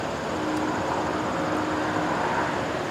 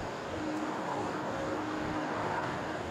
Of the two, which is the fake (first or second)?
second